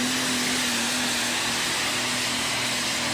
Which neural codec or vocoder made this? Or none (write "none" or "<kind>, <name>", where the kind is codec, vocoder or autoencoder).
none